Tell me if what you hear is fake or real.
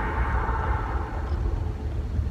real